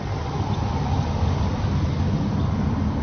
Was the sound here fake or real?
real